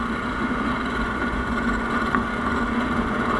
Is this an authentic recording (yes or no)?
no